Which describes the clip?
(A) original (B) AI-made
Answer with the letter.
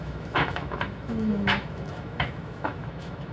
B